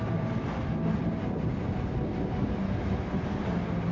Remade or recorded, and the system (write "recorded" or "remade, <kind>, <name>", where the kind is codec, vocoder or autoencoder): recorded